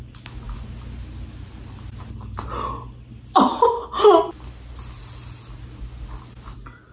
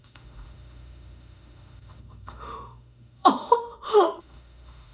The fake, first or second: second